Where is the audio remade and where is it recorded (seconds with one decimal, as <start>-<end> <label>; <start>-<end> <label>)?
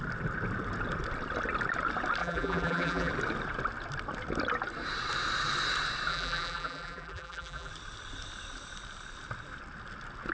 0.0-2.2 recorded; 2.2-3.1 remade; 3.1-6.1 recorded; 6.1-7.7 remade; 7.7-10.3 recorded